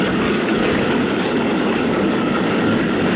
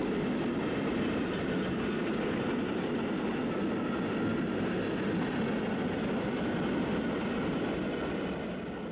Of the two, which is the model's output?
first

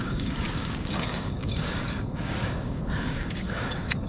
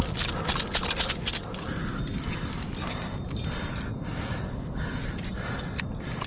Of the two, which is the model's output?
first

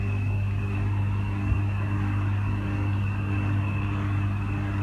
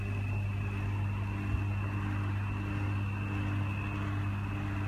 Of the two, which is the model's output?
first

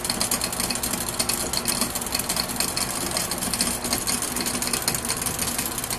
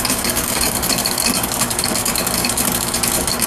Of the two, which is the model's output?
second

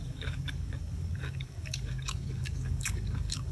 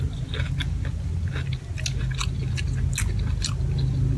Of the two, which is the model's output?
first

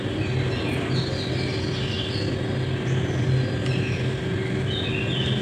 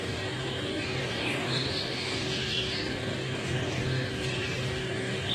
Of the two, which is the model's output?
second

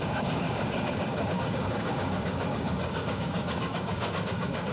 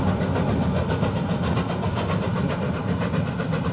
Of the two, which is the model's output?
first